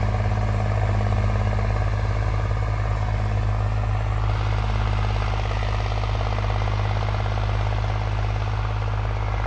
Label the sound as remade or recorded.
recorded